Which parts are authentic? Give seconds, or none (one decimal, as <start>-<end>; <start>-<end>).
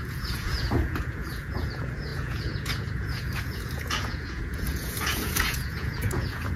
none